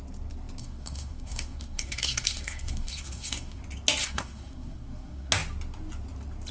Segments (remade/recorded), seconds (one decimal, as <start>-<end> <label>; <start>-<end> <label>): 0.0-0.6 recorded; 0.6-3.6 remade; 3.6-4.0 recorded; 4.0-5.3 remade; 5.3-6.5 recorded